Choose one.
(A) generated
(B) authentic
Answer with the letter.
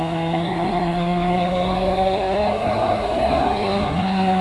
A